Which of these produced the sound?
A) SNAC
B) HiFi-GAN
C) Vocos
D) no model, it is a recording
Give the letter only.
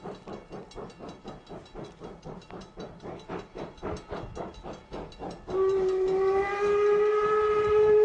D